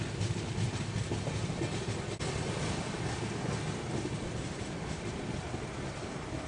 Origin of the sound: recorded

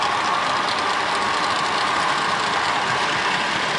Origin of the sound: recorded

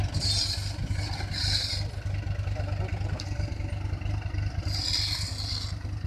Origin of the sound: recorded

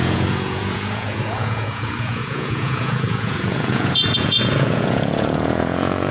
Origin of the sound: remade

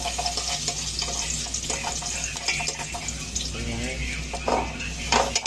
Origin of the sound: recorded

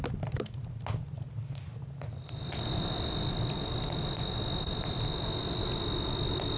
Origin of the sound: recorded